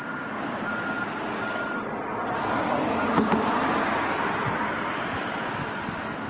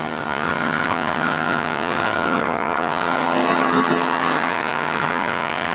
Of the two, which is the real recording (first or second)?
first